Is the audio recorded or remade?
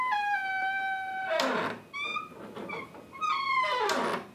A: recorded